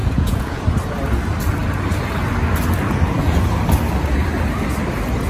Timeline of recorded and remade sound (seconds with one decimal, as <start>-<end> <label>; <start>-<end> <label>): 0.0-0.6 remade; 0.6-5.3 recorded